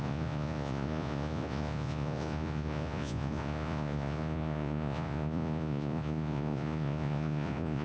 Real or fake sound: fake